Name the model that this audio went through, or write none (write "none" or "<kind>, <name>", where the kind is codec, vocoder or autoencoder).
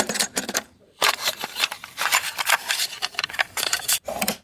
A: vocoder, BigVGAN v2